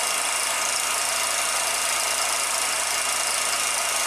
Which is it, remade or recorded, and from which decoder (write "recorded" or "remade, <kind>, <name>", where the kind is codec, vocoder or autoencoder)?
recorded